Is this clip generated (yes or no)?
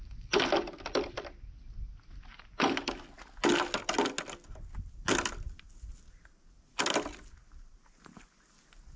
no